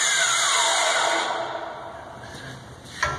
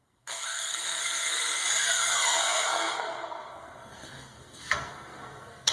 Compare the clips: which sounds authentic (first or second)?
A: first